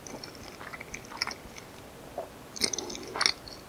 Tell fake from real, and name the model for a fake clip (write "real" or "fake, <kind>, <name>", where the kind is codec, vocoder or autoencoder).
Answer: real